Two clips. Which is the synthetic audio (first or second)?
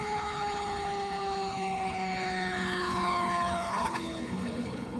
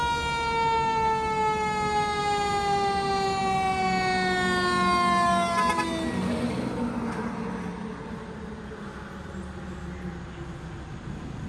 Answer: first